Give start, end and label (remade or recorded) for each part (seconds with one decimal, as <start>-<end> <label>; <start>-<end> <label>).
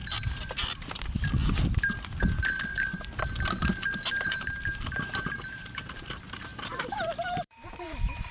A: 0.0-4.1 recorded; 4.1-8.3 remade